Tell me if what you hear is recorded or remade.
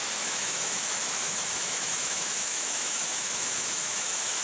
remade